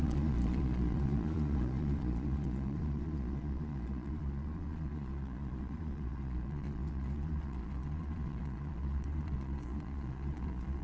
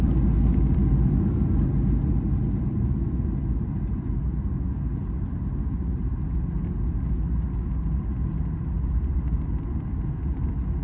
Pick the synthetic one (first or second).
first